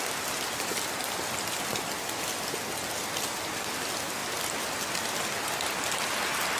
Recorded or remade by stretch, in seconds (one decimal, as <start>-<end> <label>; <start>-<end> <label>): 0.0-6.6 recorded

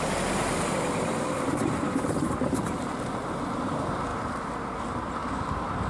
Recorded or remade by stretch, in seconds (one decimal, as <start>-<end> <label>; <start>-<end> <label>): 0.0-2.9 remade; 2.9-3.5 recorded; 3.5-5.2 remade; 5.2-5.9 recorded

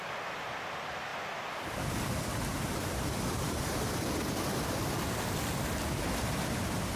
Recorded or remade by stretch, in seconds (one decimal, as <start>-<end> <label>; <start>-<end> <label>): 0.0-1.1 remade; 1.1-2.0 recorded; 2.0-7.0 remade

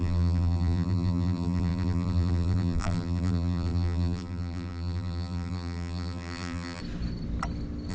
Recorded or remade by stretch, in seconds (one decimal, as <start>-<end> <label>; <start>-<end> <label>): 0.0-6.8 remade; 6.8-7.9 recorded

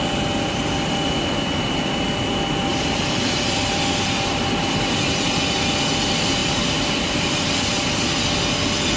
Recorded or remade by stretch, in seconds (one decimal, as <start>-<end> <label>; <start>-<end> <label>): 0.0-2.7 recorded; 2.7-4.4 remade; 4.4-6.4 recorded; 6.4-7.5 remade; 7.5-9.0 recorded

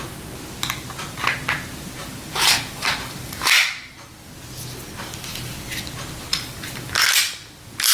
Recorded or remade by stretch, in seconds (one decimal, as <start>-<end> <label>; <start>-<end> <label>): 0.0-2.0 recorded; 2.0-3.7 remade; 3.7-6.3 recorded; 6.3-6.9 remade; 6.9-7.9 recorded

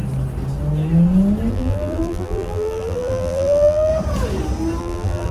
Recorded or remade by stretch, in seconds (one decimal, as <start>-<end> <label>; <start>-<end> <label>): 0.0-1.5 recorded; 1.5-3.9 remade; 3.9-4.8 recorded; 4.8-5.3 remade